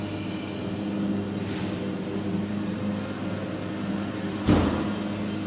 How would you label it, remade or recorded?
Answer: recorded